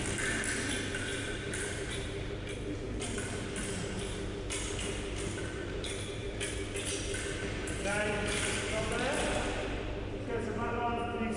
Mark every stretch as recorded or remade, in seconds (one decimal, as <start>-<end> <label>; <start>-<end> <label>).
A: 0.0-1.1 recorded; 1.1-3.8 remade; 3.8-5.4 recorded; 5.4-6.5 remade; 6.5-7.6 recorded; 7.6-8.5 remade; 8.5-11.4 recorded